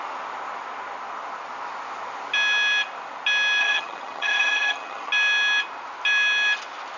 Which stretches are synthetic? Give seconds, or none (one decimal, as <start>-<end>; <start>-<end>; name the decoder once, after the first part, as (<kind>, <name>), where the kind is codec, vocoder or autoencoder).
3.6-5.1 (vocoder, HiFi-GAN)